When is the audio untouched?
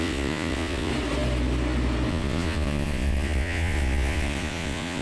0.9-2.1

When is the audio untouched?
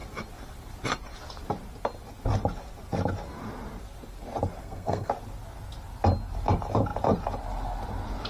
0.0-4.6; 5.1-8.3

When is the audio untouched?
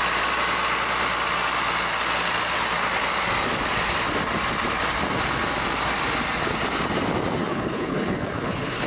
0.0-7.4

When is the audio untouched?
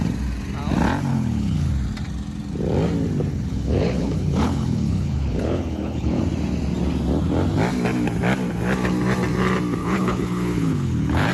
0.0-1.1; 1.7-3.3; 6.2-9.8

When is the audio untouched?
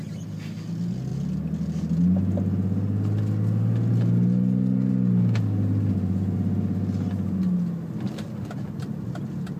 0.0-9.6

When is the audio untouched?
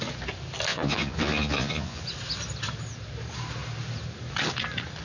0.0-0.7; 2.0-5.0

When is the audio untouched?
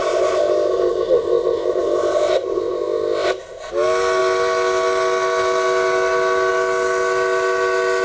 3.7-8.0